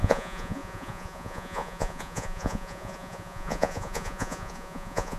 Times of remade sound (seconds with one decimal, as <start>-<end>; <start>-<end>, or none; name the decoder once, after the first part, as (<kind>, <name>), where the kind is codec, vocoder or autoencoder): 0.0-5.2 (vocoder, Vocos)